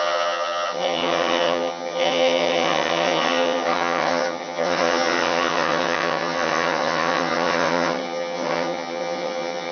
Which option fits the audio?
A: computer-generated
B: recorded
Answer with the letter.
A